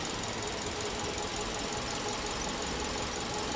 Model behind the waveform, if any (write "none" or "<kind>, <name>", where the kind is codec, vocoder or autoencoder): none